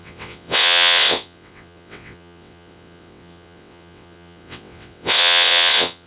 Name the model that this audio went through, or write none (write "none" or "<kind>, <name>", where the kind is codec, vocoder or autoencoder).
vocoder, WaveNeXt